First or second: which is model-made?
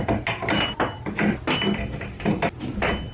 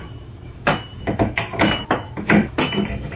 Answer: second